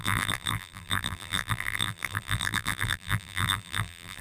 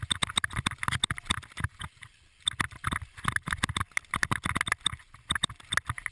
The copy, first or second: first